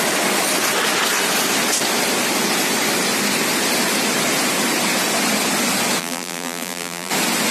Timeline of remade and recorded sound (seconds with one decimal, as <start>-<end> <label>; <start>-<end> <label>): 0.0-6.0 recorded; 6.0-7.1 remade; 7.1-7.5 recorded